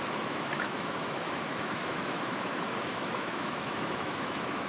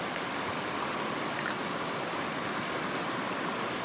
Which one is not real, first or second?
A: first